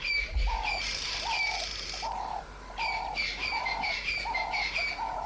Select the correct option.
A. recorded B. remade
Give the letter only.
B